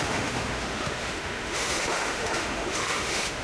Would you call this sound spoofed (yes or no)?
yes